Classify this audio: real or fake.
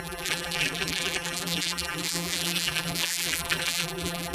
fake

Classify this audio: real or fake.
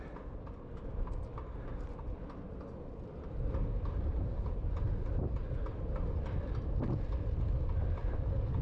real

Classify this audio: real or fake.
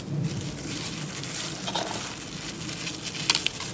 real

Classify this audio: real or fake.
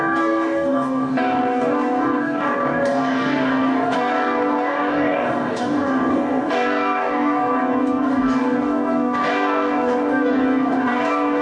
fake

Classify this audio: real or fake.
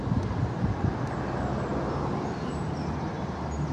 real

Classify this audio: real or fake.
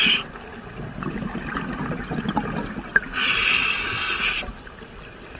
real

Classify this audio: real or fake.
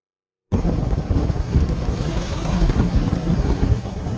fake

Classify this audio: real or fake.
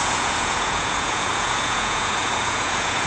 fake